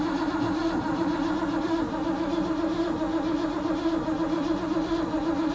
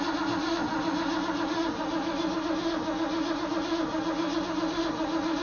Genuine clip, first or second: second